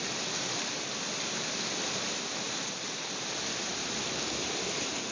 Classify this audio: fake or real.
real